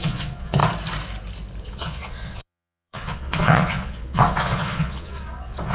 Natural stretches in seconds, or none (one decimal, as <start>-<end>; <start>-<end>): 0.6-1.6